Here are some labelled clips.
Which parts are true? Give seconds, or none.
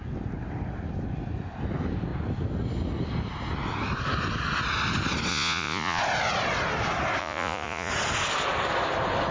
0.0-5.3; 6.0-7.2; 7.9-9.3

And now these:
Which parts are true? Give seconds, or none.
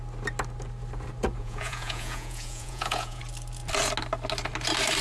0.0-1.4; 3.2-5.0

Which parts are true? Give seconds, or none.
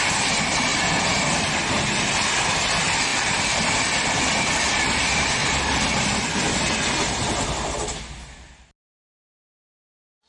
0.0-0.7; 2.1-3.1; 5.0-10.3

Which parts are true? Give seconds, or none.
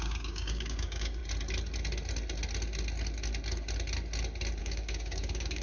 1.2-4.6